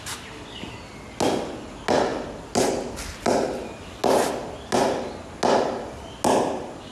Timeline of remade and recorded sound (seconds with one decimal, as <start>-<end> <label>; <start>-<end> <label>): 0.0-6.9 recorded